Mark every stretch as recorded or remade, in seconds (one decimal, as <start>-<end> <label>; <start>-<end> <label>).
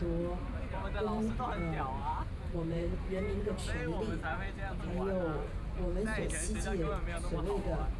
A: 0.0-0.7 recorded; 0.7-1.4 remade; 1.4-2.0 recorded; 2.0-3.5 remade; 3.5-8.0 recorded